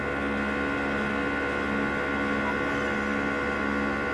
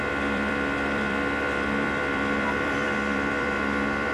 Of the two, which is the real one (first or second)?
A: first